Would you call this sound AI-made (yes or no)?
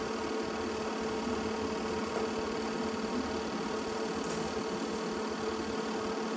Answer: no